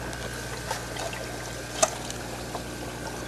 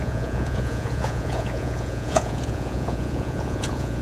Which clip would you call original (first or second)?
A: first